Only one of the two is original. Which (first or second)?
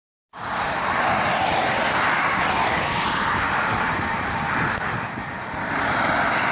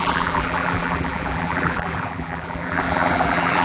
first